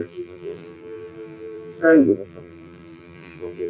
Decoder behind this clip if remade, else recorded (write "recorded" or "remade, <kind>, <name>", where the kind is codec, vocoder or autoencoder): remade, vocoder, BigVGAN v2